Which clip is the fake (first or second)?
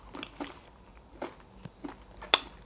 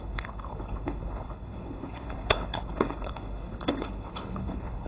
second